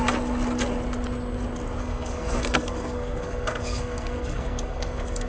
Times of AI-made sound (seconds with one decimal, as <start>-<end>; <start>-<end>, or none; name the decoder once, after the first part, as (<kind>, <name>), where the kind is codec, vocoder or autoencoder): 1.8-5.3 (codec, SNAC)